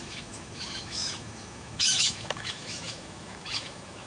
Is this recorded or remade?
remade